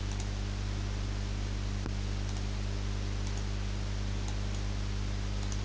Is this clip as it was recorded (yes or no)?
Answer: yes